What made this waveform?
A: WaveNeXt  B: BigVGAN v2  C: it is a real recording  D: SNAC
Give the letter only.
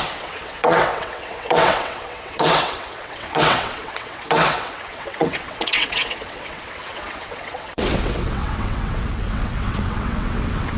A